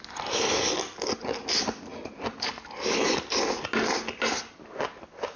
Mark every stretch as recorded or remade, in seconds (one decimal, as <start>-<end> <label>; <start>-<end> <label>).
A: 0.0-5.4 recorded